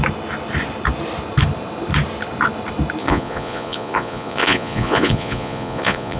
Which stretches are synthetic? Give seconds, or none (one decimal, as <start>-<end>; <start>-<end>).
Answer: 3.0-6.2